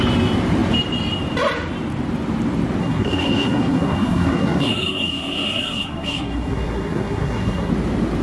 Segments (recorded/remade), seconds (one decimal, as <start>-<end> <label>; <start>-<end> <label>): 0.0-2.8 recorded; 2.8-7.7 remade; 7.7-8.2 recorded